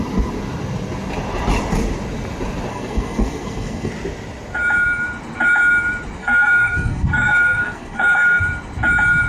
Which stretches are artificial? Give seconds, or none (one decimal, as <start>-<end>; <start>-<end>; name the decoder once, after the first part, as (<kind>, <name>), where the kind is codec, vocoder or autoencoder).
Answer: 2.7-3.9 (codec, SNAC); 6.2-8.4